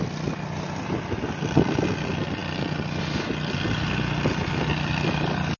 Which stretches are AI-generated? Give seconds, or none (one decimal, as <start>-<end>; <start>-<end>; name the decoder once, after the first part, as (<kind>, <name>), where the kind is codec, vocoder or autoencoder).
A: none